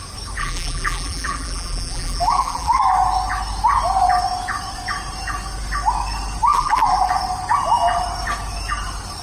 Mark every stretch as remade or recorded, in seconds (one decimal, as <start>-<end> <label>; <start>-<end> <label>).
0.0-0.4 recorded; 0.4-2.8 remade; 2.8-6.5 recorded; 6.5-7.1 remade; 7.1-9.2 recorded